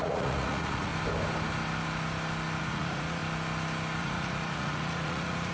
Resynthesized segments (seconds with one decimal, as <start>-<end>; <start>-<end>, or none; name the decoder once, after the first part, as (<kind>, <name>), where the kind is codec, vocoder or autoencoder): 0.0-0.9 (vocoder, Vocos); 2.6-3.2; 4.0-5.5